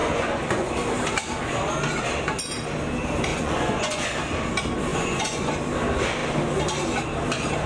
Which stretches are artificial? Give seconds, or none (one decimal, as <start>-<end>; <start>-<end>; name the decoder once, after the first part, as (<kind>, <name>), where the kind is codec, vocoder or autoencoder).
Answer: 0.0-0.7 (vocoder, Vocos); 3.3-4.1; 4.9-5.5